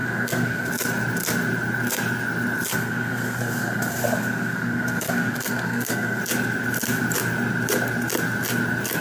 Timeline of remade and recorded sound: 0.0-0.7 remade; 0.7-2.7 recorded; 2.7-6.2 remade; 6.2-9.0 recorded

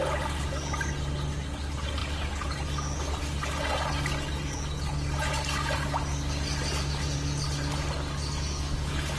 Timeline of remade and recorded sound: 0.0-9.2 recorded